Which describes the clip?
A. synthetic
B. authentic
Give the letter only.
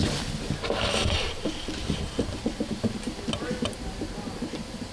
B